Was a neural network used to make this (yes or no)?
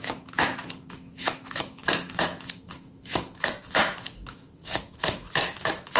yes